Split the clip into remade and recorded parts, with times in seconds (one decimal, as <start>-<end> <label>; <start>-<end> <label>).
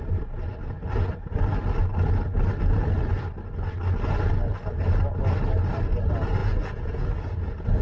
0.0-6.4 recorded; 6.4-7.8 remade